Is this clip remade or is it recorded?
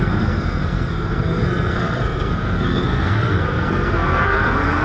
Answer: remade